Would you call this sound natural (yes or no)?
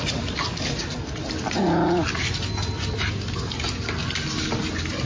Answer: yes